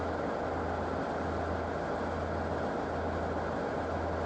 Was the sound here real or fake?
real